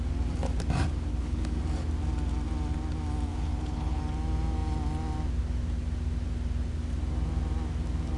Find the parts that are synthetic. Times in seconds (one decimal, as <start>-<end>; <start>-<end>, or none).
1.1-1.6; 3.3-4.0